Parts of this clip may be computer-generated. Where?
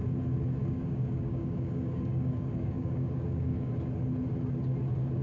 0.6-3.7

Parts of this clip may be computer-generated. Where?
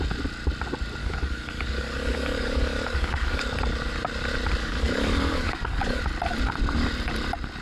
1.0-3.4; 4.6-6.0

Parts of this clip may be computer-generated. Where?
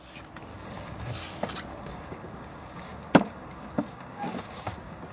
0.5-1.1; 1.7-5.1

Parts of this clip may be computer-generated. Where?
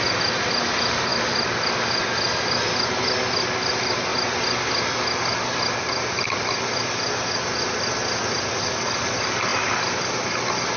none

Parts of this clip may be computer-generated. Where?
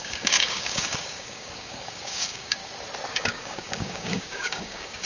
0.0-2.6; 3.1-5.0